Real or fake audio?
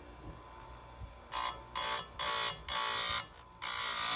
real